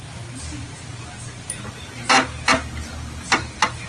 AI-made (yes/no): no